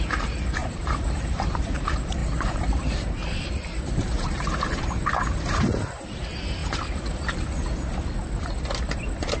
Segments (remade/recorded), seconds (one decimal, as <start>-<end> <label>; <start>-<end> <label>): 0.0-0.6 recorded; 0.6-1.7 remade; 1.7-2.2 recorded; 2.2-6.0 remade; 6.0-9.4 recorded